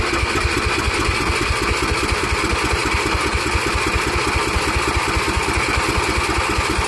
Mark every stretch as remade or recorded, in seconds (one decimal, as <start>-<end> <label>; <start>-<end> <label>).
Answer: 0.0-6.9 recorded